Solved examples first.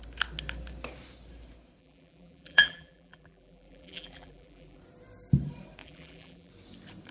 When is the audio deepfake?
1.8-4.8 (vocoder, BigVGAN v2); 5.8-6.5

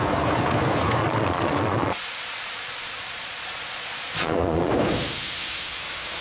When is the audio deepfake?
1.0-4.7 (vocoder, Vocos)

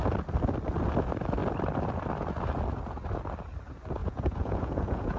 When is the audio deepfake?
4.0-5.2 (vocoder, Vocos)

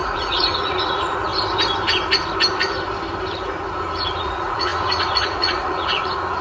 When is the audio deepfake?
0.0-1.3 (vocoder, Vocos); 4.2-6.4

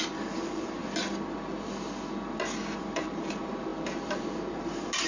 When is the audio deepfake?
0.0-0.8 (vocoder, BigVGAN v2); 2.8-5.1